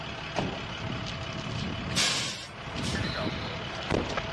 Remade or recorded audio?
recorded